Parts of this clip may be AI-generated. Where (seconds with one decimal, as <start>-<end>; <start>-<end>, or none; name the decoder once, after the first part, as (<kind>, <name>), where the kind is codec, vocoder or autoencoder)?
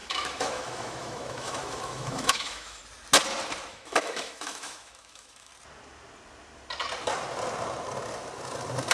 0.0-2.8 (autoencoder, DAC-VAE); 3.7-5.5